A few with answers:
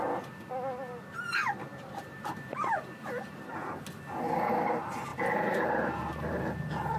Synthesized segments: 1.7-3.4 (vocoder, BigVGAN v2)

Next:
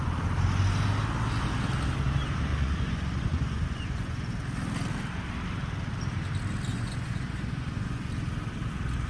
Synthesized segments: 2.5-4.3 (vocoder, Vocos); 6.7-8.1

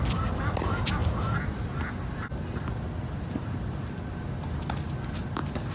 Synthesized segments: none

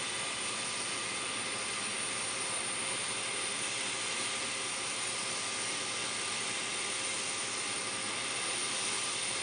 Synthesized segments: none

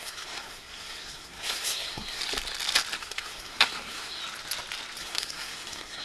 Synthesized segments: 0.0-2.2 (codec, SNAC); 3.0-4.2; 5.0-6.0